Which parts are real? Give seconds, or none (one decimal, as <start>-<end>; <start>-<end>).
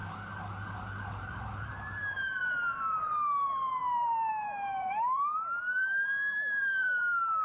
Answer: 0.0-0.8